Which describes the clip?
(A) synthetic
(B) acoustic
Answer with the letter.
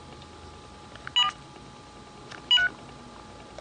B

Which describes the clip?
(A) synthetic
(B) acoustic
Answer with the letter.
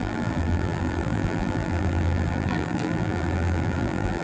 A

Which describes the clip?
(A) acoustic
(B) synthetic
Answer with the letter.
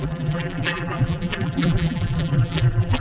B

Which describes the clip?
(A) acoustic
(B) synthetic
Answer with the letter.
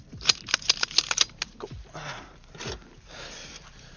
A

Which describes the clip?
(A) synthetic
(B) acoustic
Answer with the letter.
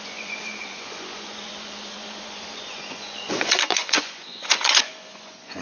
A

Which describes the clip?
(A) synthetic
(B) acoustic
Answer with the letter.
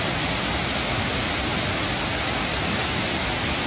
B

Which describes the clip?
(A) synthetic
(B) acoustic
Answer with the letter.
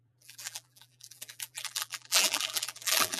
A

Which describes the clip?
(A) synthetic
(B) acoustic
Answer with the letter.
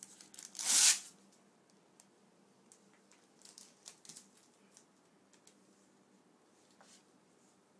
B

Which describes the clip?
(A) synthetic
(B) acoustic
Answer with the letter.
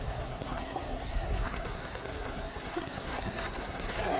A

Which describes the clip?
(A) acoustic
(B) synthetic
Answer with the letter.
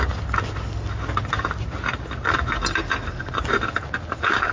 A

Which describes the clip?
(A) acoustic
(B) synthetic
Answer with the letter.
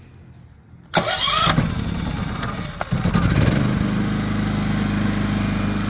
A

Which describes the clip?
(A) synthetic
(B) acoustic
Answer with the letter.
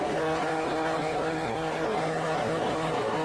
A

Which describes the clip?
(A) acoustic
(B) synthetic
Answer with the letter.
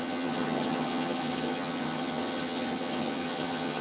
B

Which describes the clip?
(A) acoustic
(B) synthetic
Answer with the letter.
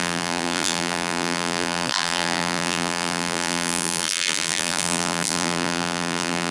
B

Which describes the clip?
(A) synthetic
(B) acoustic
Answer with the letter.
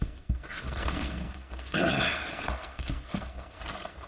A